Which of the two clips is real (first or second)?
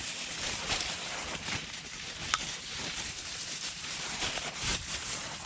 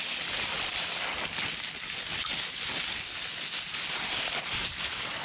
second